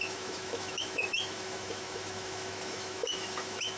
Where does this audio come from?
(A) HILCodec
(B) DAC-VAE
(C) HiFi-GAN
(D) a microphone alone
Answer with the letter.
B